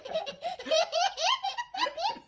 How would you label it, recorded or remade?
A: remade